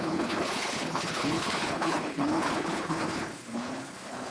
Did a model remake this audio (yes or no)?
yes